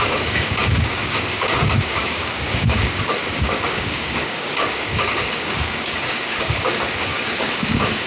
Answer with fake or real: fake